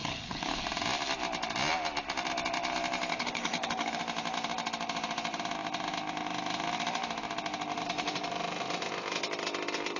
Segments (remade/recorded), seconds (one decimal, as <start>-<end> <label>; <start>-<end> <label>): 0.0-0.6 remade; 0.6-3.1 recorded; 3.1-4.0 remade; 4.0-10.0 recorded